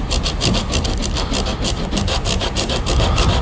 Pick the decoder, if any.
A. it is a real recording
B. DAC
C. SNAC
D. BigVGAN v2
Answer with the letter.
D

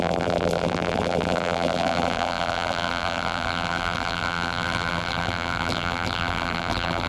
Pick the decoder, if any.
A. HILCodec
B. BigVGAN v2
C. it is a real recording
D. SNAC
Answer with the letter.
B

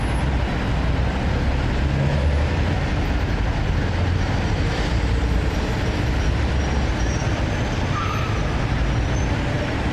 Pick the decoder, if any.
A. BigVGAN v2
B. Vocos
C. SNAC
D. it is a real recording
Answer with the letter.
D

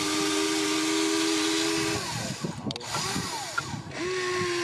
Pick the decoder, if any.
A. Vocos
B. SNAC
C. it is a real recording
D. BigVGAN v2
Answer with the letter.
C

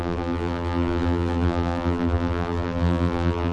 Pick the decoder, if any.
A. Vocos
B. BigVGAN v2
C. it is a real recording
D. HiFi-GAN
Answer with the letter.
B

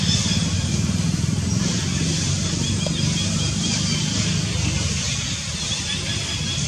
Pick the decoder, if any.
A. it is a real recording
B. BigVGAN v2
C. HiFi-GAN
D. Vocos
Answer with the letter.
A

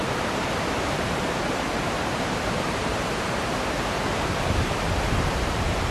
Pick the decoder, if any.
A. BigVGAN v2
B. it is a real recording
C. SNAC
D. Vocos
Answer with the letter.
A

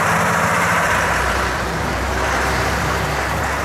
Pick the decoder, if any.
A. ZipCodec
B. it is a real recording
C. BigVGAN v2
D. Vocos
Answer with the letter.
C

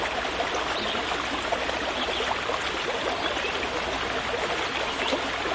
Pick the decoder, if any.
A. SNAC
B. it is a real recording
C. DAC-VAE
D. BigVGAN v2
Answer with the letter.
B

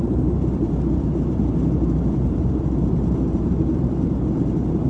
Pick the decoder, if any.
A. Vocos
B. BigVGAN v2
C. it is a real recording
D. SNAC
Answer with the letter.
B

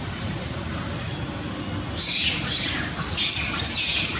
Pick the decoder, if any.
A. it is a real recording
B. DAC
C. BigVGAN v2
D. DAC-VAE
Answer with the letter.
A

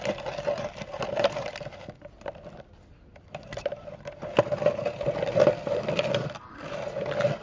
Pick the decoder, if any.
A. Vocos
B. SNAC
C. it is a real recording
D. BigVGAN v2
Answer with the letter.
D